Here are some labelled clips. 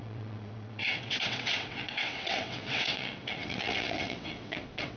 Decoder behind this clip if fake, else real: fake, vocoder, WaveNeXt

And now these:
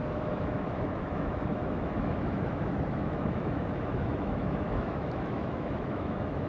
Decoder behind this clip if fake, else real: fake, autoencoder, DAC-VAE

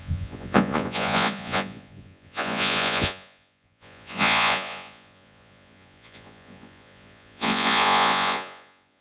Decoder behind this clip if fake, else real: fake, vocoder, Vocos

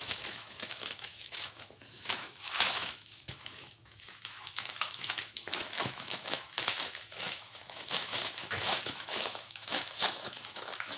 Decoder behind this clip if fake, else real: fake, autoencoder, DAC-VAE